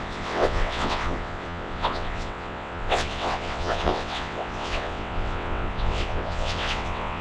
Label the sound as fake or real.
fake